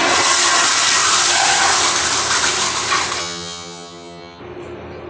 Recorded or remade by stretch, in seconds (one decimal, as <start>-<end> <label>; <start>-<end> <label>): 0.0-3.2 recorded; 3.2-4.4 remade; 4.4-5.1 recorded